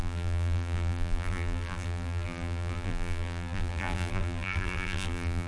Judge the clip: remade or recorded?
remade